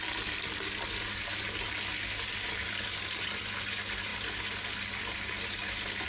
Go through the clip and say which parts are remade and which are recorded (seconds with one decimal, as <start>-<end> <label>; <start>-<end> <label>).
0.0-6.1 recorded